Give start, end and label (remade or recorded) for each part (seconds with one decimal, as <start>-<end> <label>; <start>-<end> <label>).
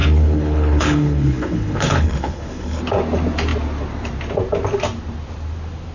0.0-2.8 remade; 2.8-5.9 recorded